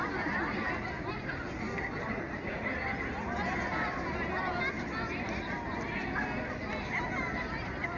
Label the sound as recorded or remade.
recorded